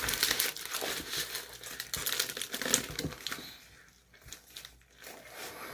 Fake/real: real